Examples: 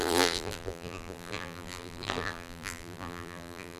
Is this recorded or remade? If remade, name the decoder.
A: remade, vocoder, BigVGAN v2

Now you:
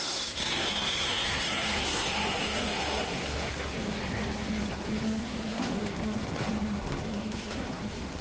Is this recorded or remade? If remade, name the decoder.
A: remade, codec, SNAC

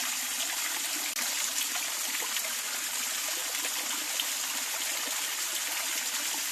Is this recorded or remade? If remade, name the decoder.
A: recorded